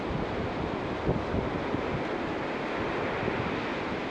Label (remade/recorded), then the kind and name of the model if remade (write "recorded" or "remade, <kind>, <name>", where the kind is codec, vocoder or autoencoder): recorded